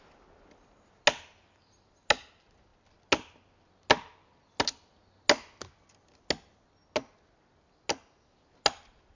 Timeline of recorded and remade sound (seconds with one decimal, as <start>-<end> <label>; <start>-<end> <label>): 0.0-9.1 recorded